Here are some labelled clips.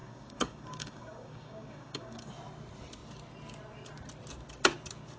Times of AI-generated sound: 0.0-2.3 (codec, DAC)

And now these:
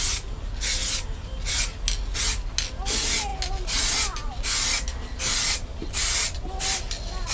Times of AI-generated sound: none

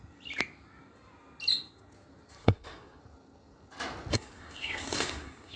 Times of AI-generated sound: 2.4-3.0 (codec, SNAC); 4.1-5.6

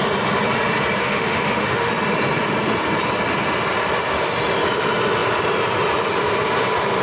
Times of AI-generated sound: 1.0-1.9 (autoencoder, DAC-VAE)

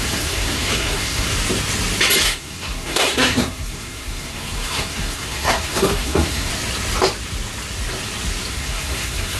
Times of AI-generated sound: 0.0-1.3 (codec, SNAC); 2.2-6.5; 8.5-9.4

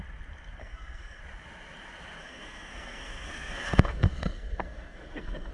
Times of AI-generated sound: 0.6-1.2 (codec, SNAC); 2.2-5.5

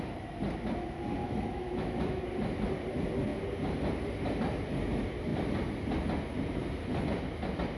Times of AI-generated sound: 1.2-2.2 (autoencoder, DAC-VAE)

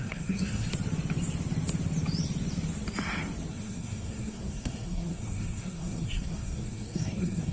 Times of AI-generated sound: 0.0-0.7 (codec, SNAC); 3.5-7.5